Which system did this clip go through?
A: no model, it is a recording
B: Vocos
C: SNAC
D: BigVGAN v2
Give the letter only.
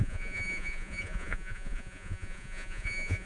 B